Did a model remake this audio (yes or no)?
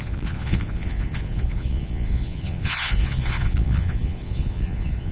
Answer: yes